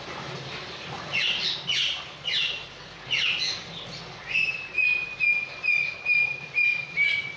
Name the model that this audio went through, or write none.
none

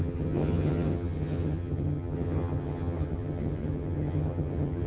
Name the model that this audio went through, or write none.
vocoder, HiFi-GAN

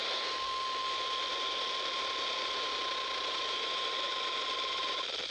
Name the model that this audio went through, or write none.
vocoder, BigVGAN v2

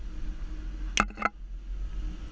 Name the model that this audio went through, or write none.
none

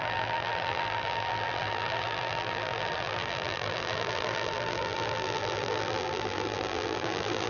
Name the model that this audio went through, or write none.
vocoder, BigVGAN v2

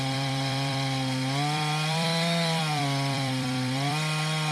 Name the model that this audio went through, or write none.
vocoder, BigVGAN v2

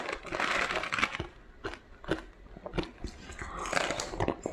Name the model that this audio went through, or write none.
none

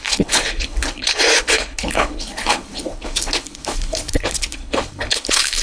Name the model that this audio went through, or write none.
codec, HILCodec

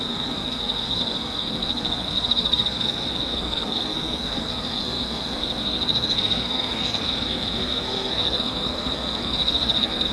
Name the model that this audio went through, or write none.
codec, SNAC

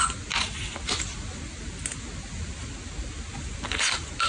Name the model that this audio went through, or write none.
none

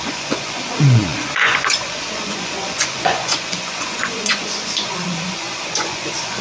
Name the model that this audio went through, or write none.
vocoder, Vocos